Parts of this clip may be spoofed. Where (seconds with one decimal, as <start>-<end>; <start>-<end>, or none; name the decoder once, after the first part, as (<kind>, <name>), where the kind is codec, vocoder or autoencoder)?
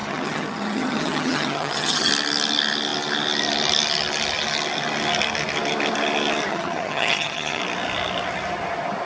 0.0-2.1 (vocoder, HiFi-GAN); 6.5-7.6